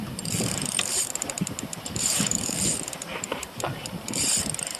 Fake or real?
fake